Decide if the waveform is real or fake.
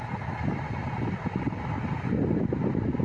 real